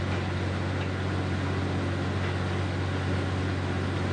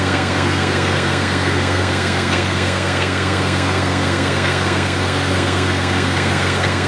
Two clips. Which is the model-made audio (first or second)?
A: second